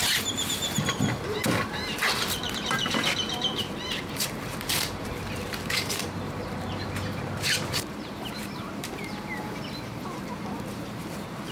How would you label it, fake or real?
fake